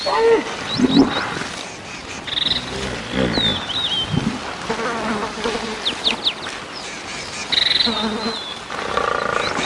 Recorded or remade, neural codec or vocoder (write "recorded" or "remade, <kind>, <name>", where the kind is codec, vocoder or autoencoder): recorded